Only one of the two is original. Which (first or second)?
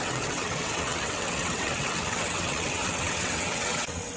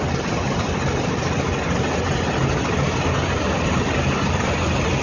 second